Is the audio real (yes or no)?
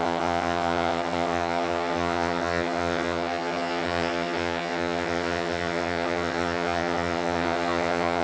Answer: no